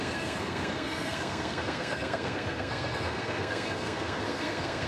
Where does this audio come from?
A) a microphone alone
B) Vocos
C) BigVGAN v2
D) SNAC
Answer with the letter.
D